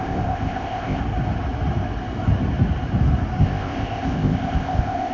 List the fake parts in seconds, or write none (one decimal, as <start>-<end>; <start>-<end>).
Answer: 0.0-1.0; 3.4-5.1